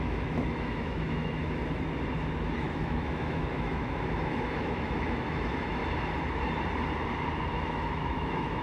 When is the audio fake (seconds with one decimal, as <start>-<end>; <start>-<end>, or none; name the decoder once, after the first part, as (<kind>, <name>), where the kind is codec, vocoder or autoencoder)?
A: 0.0-1.6 (autoencoder, DAC-VAE); 2.6-5.8; 7.5-8.6